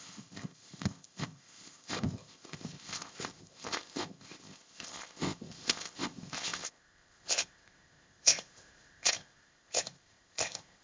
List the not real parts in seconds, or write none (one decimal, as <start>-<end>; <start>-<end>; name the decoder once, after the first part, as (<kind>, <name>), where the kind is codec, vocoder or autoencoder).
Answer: 0.0-10.8 (codec, ZipCodec)